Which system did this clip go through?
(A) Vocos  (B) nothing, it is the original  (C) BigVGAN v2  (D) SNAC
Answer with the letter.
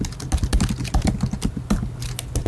B